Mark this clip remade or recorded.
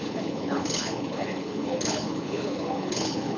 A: remade